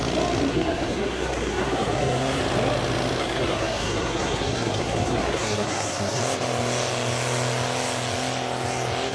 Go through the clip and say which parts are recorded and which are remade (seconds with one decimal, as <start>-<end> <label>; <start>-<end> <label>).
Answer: 0.0-0.5 recorded; 0.5-2.4 remade; 2.4-3.2 recorded; 3.2-6.2 remade; 6.2-9.1 recorded